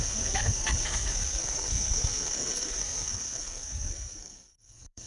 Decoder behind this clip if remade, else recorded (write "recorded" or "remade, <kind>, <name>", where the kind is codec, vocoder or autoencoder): remade, codec, SNAC